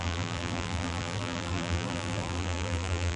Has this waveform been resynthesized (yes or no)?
yes